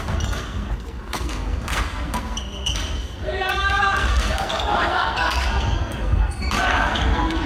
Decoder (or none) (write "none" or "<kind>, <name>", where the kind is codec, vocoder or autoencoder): codec, SNAC